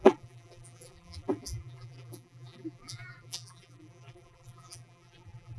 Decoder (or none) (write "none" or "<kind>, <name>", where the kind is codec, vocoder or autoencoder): vocoder, BigVGAN v2